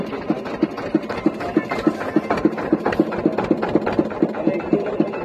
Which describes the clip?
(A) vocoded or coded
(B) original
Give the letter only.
B